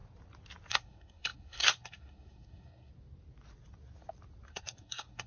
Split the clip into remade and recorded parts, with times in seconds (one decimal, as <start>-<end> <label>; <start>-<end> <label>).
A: 0.0-0.7 recorded; 0.7-2.9 remade; 2.9-4.5 recorded; 4.5-5.3 remade